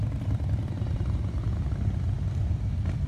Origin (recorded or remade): recorded